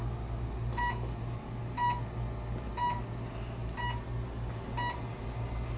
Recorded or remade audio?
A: recorded